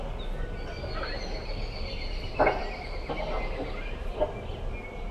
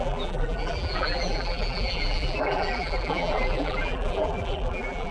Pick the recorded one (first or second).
first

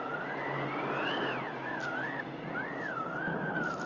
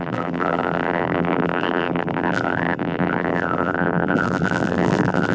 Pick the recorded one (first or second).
first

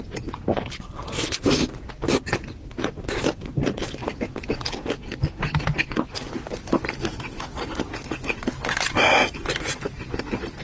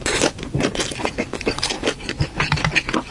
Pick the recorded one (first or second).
first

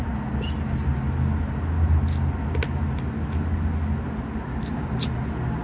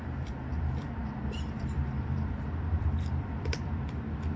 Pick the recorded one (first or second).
first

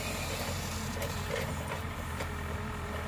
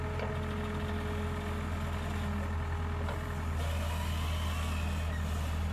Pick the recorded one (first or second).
second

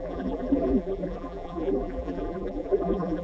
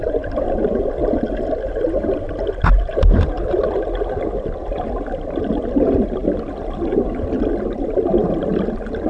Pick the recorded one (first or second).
second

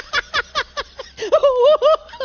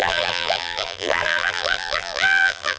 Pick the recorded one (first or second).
first